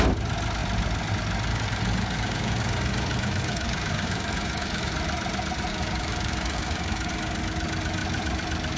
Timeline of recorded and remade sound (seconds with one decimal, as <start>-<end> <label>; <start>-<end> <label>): 0.0-1.5 recorded; 1.5-4.9 remade; 4.9-5.7 recorded; 5.7-7.1 remade; 7.1-8.8 recorded